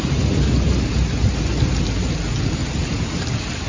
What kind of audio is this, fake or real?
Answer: real